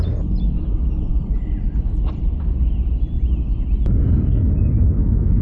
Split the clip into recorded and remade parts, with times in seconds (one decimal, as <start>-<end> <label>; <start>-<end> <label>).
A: 0.0-5.4 recorded